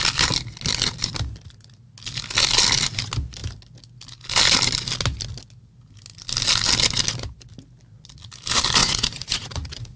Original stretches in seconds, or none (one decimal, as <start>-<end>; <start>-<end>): 0.0-8.8